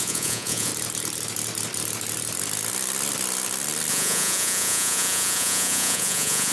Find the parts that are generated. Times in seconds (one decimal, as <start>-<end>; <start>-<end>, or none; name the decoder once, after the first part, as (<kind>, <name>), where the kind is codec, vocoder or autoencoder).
0.0-0.7 (vocoder, Vocos); 3.9-6.5